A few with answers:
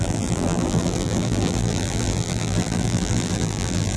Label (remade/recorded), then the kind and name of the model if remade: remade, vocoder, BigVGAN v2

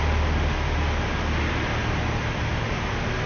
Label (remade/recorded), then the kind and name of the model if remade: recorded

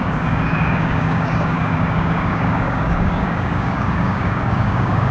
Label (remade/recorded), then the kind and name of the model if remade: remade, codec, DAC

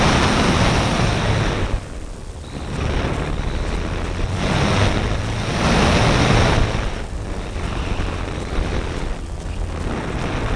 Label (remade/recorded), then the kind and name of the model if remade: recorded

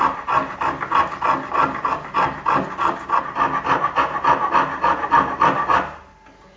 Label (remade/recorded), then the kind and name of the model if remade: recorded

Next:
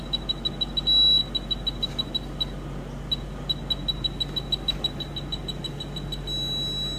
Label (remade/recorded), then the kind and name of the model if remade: recorded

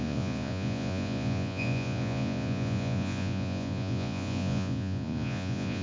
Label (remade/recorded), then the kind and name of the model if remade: remade, vocoder, Vocos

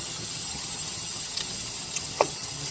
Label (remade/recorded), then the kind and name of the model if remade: remade, vocoder, HiFi-GAN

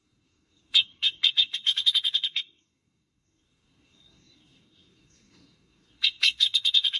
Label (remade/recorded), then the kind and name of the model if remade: remade, codec, SNAC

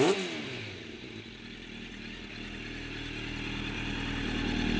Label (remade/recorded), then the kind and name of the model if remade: recorded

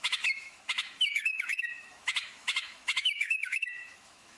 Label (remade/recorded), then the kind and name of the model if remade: remade, autoencoder, DAC-VAE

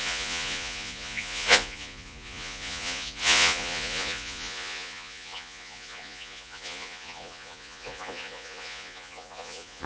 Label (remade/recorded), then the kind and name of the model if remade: remade, vocoder, Vocos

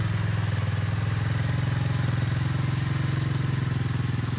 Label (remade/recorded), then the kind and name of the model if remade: recorded